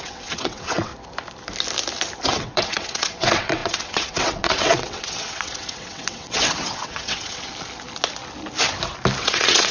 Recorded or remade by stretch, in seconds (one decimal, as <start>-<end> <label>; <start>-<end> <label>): 0.0-0.9 remade; 0.9-2.3 recorded; 2.3-7.5 remade; 7.5-9.2 recorded; 9.2-9.7 remade